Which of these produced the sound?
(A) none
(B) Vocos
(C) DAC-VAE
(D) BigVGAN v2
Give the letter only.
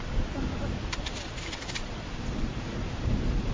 D